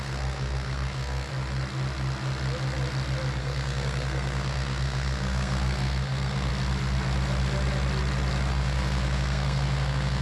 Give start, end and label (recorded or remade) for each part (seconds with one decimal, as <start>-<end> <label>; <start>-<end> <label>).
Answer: 0.0-1.3 remade; 1.3-3.4 recorded; 3.4-6.5 remade; 6.5-8.5 recorded; 8.5-10.2 remade